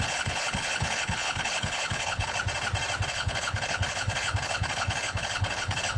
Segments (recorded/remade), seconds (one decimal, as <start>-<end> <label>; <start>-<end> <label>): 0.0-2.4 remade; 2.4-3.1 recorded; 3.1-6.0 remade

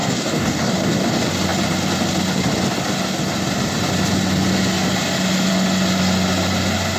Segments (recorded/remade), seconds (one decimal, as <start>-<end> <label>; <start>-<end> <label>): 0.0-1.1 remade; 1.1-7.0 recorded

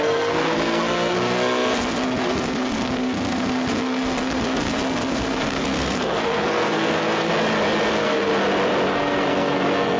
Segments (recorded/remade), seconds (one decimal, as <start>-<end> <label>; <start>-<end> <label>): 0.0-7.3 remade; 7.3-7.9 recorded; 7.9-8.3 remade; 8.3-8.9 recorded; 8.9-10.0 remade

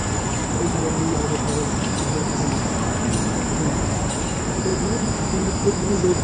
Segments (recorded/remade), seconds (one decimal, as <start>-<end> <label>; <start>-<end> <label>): 0.0-0.5 remade; 0.5-6.2 recorded

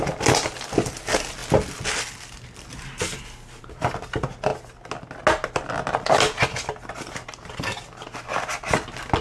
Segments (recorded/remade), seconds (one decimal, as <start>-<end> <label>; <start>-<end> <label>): 0.0-9.2 recorded

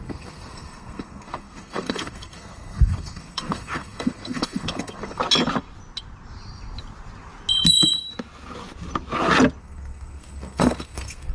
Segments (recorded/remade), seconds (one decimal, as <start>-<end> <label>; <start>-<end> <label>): 0.0-5.2 remade; 5.2-9.6 recorded; 9.6-11.3 remade

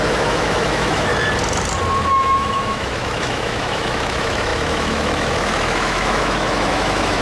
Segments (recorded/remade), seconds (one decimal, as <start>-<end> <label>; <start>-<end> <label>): 0.0-1.1 remade; 1.1-2.1 recorded; 2.1-7.2 remade